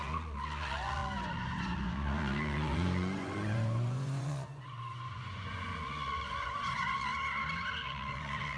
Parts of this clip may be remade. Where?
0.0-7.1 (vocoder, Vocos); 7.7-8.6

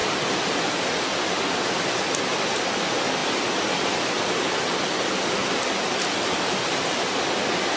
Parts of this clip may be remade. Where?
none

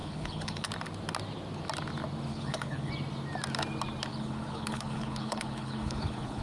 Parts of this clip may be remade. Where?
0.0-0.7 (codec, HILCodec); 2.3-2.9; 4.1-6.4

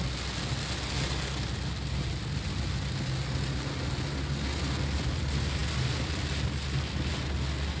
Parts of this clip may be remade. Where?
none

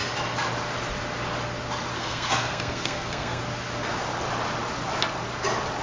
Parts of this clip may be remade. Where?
1.9-3.4 (codec, SNAC)